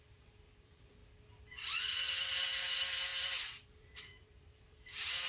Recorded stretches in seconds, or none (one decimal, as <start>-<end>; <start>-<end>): 1.0-1.9